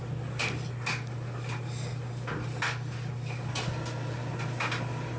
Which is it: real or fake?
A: real